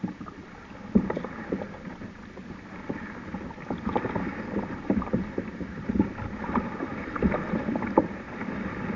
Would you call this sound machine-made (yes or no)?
yes